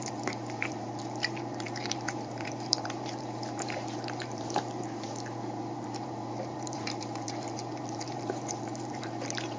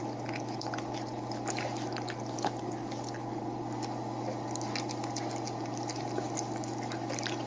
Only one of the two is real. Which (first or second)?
second